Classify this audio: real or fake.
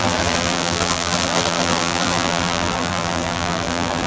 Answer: fake